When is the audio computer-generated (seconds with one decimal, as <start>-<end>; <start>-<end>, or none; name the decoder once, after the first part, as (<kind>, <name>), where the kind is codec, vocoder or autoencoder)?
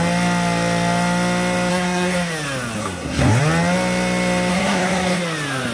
1.7-2.3 (codec, SNAC); 2.8-3.4; 4.5-5.2